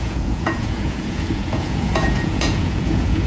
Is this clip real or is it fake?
fake